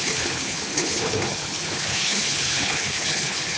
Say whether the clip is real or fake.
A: fake